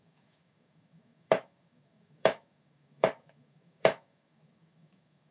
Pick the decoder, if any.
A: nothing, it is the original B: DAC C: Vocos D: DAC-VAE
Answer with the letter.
D